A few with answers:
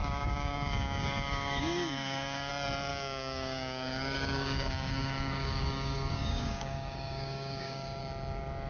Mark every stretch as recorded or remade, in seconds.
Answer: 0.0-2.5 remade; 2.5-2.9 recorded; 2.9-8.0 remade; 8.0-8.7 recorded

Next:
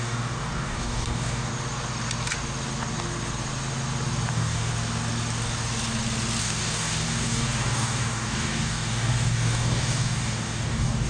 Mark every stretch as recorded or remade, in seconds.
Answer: 0.0-1.5 remade; 1.5-4.3 recorded; 4.3-4.7 remade; 4.7-6.4 recorded; 6.4-11.1 remade

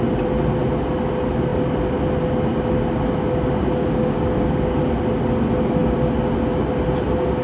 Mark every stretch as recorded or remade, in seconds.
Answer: 0.0-3.8 recorded; 3.8-4.8 remade; 4.8-7.4 recorded

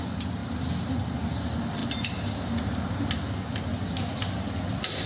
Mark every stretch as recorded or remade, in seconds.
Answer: 0.0-5.1 recorded

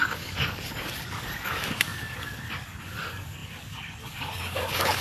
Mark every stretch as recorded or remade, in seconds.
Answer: 0.0-5.0 remade